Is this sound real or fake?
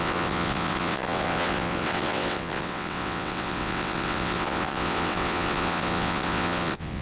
fake